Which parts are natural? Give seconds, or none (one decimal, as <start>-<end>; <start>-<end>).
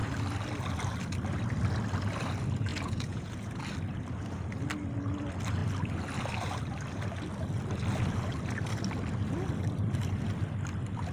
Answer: 0.0-2.7; 3.6-11.1